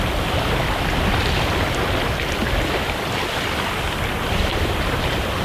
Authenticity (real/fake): real